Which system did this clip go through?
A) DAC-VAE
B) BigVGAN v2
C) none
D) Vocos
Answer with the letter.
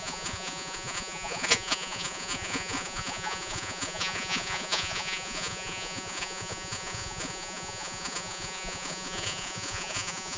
D